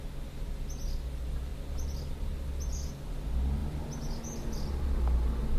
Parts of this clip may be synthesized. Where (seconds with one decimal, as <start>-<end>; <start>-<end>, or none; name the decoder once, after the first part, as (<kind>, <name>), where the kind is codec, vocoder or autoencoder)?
none